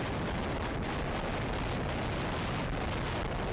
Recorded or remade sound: recorded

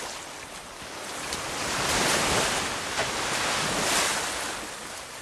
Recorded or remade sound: recorded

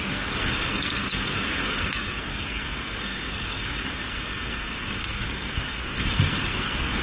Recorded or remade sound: remade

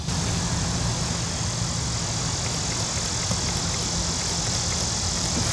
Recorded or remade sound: recorded